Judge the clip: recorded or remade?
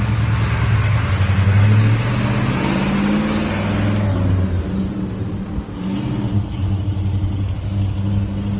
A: recorded